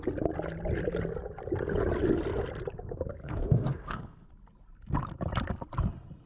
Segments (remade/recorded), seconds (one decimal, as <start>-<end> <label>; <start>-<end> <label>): 0.0-3.2 recorded; 3.2-4.3 remade; 4.3-6.3 recorded